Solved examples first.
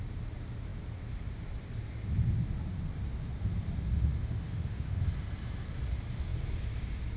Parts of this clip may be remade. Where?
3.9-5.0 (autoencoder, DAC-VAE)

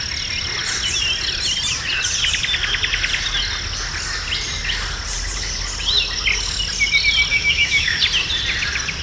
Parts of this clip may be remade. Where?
7.3-8.0 (autoencoder, DAC-VAE)

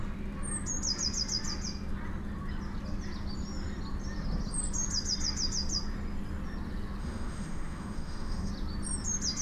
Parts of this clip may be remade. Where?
7.0-8.5 (autoencoder, DAC-VAE)

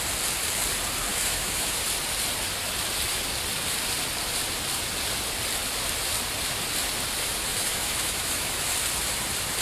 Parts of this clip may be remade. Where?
1.1-1.8 (autoencoder, DAC-VAE); 7.5-8.7

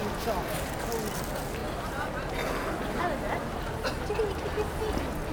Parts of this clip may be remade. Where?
none

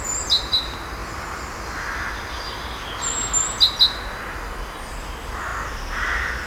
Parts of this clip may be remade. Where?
none

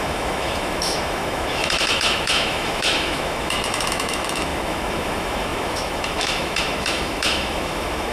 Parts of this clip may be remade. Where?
0.0-8.1 (autoencoder, DAC-VAE)